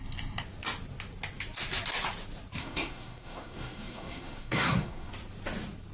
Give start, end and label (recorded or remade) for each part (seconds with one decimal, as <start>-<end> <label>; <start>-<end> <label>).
0.0-2.6 recorded; 2.6-5.1 remade; 5.1-5.9 recorded